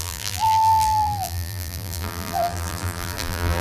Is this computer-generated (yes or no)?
yes